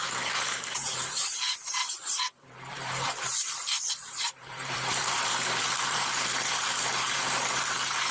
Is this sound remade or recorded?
remade